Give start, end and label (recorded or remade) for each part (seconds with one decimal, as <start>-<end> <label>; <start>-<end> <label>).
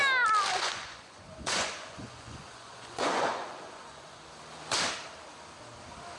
0.0-0.5 recorded; 0.5-4.2 remade; 4.2-6.2 recorded